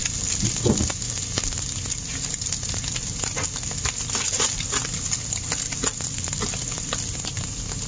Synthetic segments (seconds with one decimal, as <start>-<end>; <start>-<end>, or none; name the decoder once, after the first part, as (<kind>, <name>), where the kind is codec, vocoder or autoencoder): none